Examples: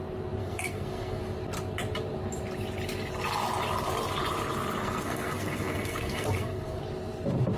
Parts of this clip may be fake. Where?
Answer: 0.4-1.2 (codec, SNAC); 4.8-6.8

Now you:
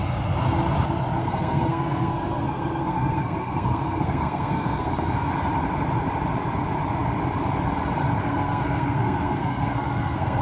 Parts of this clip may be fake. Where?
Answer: 1.2-5.3 (codec, SNAC); 8.2-10.4